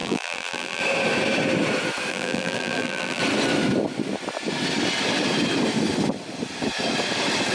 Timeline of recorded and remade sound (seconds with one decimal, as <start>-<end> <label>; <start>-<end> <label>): 0.0-0.8 remade; 0.8-2.1 recorded; 2.1-3.2 remade; 3.2-7.5 recorded